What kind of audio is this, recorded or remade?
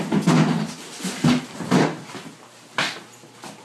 recorded